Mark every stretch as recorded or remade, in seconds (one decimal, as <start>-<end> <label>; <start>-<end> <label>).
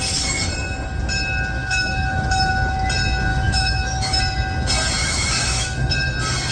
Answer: 0.0-1.6 recorded; 1.6-2.5 remade; 2.5-3.3 recorded; 3.3-4.2 remade; 4.2-5.0 recorded; 5.0-5.9 remade; 5.9-6.5 recorded